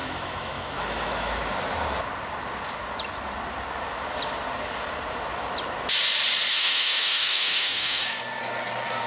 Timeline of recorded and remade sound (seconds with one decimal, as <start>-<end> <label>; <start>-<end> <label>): 0.0-1.4 remade; 1.4-6.5 recorded; 6.5-8.2 remade; 8.2-9.1 recorded